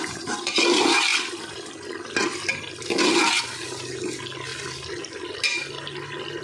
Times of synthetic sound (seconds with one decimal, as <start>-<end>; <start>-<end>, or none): none